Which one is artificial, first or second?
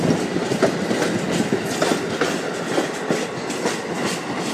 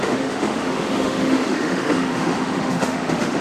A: second